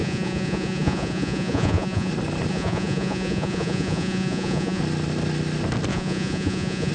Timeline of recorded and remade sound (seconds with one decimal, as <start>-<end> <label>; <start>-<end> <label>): 0.0-2.1 remade; 2.1-2.5 recorded; 2.5-4.8 remade; 4.8-5.9 recorded; 5.9-6.9 remade